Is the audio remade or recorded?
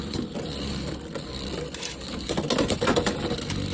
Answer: remade